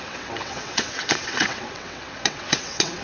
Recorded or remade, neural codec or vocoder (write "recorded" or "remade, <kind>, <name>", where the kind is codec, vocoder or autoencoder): remade, vocoder, WaveNeXt